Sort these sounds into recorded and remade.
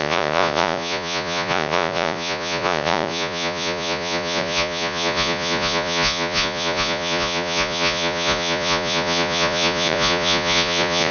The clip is remade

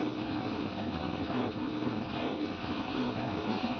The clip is remade